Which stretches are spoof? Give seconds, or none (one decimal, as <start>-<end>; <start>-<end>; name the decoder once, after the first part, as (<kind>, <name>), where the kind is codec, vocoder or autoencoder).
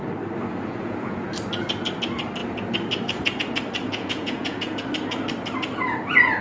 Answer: 0.5-1.3 (vocoder, Vocos); 3.9-4.8